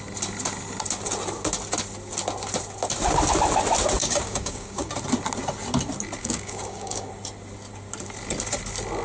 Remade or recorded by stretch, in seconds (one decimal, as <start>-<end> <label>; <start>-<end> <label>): 0.0-4.0 recorded; 4.0-4.9 remade; 4.9-6.2 recorded; 6.2-7.1 remade; 7.1-9.0 recorded